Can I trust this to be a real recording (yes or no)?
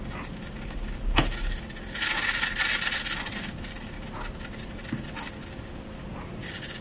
yes